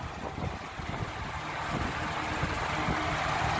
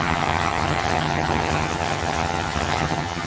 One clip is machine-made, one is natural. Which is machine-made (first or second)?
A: second